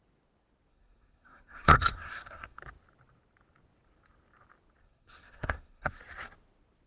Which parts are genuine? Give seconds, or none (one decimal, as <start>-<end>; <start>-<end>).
0.0-0.7; 2.6-4.8; 6.0-6.9